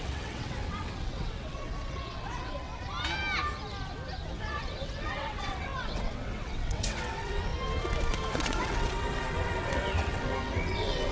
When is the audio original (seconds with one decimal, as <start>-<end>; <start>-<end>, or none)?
2.7-4.3; 7.5-8.3